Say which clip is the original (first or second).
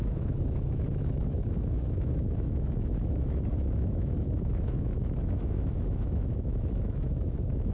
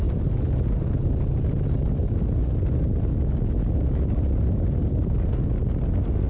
second